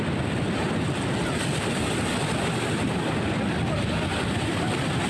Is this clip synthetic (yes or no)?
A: no